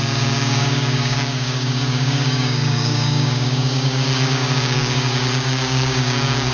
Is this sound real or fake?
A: fake